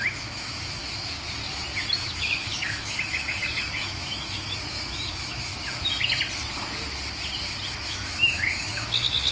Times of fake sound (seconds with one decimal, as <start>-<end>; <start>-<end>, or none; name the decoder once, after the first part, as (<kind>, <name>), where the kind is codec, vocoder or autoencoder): 0.0-0.8 (autoencoder, DAC-VAE); 1.9-5.5; 7.7-9.3